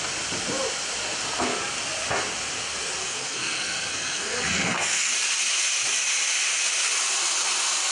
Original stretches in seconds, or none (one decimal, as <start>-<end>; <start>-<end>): 0.0-3.0; 5.1-7.9